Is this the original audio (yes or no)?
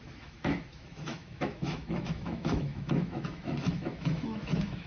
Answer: no